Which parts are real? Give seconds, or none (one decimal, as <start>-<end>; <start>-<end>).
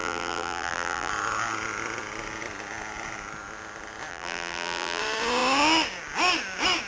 1.1-4.1; 5.0-6.9